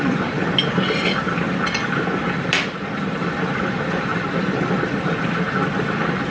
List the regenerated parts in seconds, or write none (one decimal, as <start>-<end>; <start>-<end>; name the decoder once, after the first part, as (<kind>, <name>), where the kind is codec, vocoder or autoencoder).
none